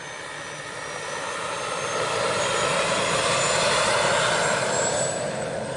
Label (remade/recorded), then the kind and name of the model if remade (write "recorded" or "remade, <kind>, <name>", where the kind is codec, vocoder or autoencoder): recorded